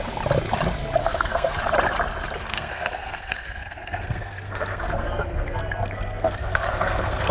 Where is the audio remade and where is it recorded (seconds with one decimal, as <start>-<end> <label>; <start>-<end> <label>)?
0.0-1.0 recorded; 1.0-1.6 remade; 1.6-2.5 recorded; 2.5-7.3 remade